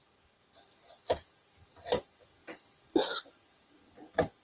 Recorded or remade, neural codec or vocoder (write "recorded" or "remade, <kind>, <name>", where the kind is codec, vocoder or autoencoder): recorded